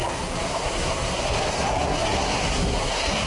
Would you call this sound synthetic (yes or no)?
yes